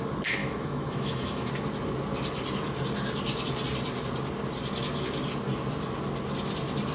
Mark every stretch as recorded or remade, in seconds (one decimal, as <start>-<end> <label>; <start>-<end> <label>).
0.0-0.4 recorded; 0.4-1.5 remade; 1.5-6.9 recorded